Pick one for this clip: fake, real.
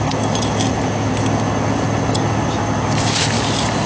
real